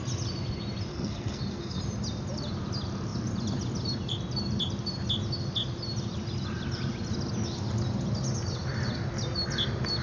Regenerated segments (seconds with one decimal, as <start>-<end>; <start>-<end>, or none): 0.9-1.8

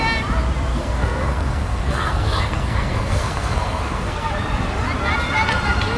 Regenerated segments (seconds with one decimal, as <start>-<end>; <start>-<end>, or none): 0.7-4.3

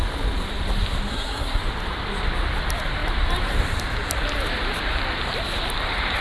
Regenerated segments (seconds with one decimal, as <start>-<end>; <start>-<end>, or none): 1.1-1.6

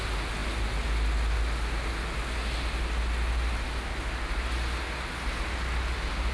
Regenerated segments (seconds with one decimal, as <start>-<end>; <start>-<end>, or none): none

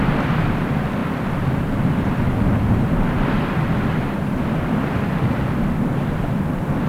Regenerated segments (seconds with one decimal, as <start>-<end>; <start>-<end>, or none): none

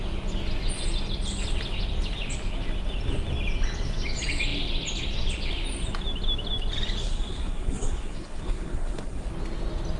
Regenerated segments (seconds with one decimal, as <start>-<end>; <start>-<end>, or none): 7.0-9.3